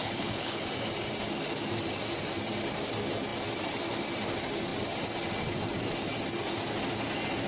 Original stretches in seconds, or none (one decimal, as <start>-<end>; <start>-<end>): 0.6-7.5